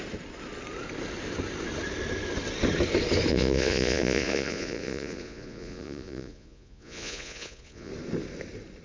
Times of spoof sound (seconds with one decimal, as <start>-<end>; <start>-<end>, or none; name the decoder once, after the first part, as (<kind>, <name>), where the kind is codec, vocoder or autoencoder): 3.3-7.9 (vocoder, Vocos)